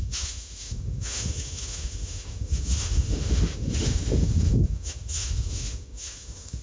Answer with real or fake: fake